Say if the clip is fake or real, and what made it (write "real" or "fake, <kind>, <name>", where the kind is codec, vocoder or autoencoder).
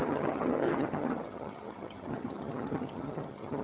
fake, vocoder, HiFi-GAN